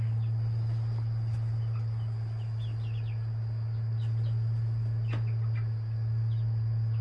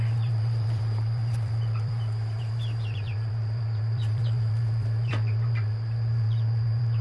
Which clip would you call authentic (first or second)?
first